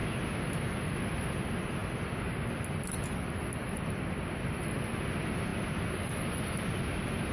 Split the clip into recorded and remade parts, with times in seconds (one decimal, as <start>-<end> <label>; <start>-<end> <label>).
0.0-5.5 recorded; 5.5-6.3 remade; 6.3-7.3 recorded